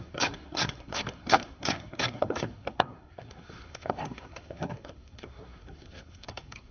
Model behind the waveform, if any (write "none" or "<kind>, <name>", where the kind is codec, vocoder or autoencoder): codec, SNAC